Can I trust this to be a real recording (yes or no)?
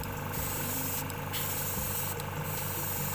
yes